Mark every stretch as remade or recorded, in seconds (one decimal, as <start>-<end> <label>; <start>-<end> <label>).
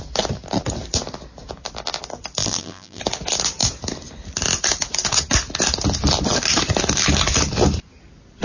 0.0-2.4 recorded; 2.4-3.0 remade; 3.0-8.4 recorded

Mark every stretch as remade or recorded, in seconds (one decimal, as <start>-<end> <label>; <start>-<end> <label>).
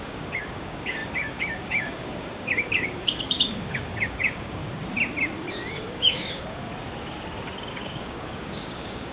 0.0-4.6 remade; 4.6-5.5 recorded; 5.5-6.7 remade; 6.7-7.7 recorded; 7.7-9.1 remade